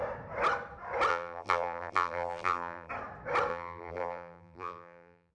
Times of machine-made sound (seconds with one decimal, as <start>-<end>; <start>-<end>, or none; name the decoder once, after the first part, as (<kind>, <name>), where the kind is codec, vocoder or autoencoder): 1.1-2.9 (vocoder, BigVGAN v2); 3.5-5.3